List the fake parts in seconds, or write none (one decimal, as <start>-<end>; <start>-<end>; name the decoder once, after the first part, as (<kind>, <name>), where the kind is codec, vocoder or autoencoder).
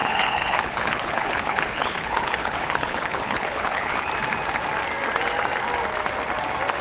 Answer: 0.0-4.1 (codec, HILCodec)